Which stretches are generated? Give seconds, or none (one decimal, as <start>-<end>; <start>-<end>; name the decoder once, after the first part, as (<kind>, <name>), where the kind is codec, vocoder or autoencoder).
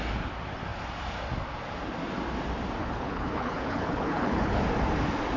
2.8-4.6 (codec, HILCodec)